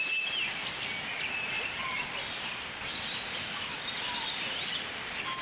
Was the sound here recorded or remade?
recorded